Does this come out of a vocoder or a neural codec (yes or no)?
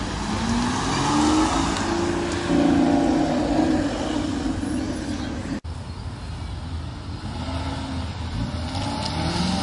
no